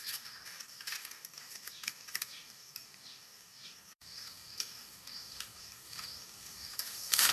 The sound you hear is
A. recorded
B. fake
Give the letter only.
B